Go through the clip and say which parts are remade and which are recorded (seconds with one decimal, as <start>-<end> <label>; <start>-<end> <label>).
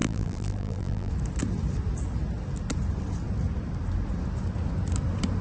0.0-1.1 remade; 1.1-5.4 recorded